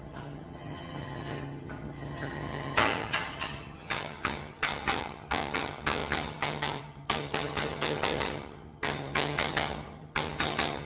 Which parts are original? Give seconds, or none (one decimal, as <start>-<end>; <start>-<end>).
none